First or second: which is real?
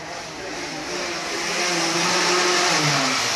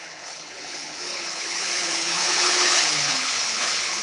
first